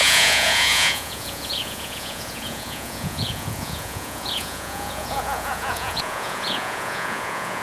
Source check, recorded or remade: remade